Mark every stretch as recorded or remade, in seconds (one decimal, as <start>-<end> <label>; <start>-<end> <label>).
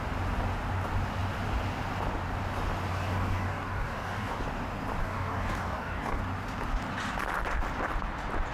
0.0-2.9 recorded; 2.9-4.4 remade; 4.4-5.0 recorded; 5.0-6.2 remade; 6.2-8.5 recorded